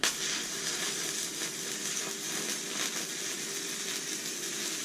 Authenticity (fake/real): real